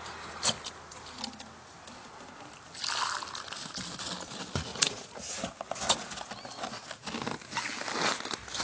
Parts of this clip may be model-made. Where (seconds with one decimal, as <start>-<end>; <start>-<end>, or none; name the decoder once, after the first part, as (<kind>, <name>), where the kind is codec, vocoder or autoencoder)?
4.7-5.4 (vocoder, Vocos)